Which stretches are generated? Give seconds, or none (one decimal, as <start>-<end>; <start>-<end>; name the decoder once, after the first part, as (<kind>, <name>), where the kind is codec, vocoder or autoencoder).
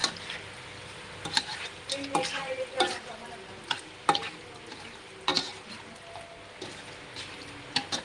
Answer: none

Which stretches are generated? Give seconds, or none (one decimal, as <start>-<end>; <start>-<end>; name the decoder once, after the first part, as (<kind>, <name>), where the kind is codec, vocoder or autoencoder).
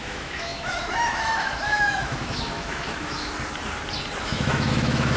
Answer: 0.0-3.3 (autoencoder, DAC-VAE); 4.2-5.2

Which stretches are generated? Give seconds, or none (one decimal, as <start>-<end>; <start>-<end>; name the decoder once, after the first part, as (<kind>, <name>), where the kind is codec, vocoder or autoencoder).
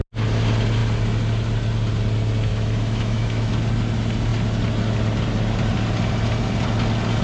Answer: 2.5-3.5 (autoencoder, DAC-VAE)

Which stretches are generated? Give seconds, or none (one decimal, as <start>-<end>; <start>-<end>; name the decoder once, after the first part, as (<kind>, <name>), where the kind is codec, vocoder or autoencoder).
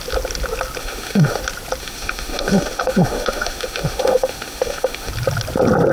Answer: 0.8-1.4 (autoencoder, DAC-VAE); 1.8-5.1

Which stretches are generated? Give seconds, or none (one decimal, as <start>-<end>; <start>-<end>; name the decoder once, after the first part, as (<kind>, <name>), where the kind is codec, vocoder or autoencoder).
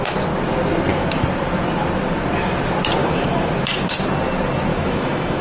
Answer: 3.0-3.5 (autoencoder, DAC-VAE); 4.7-5.4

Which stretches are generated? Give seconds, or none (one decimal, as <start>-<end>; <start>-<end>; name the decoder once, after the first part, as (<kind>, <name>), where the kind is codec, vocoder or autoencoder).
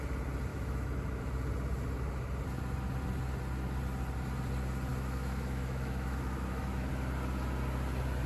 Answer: 0.5-1.2 (autoencoder, DAC-VAE); 4.9-6.9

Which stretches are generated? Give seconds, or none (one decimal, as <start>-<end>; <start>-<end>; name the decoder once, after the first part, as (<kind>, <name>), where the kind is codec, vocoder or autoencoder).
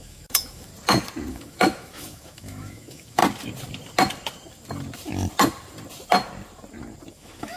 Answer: 0.0-0.7 (autoencoder, DAC-VAE); 1.3-3.2; 7.1-7.6